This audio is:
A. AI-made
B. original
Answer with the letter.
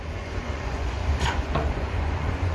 A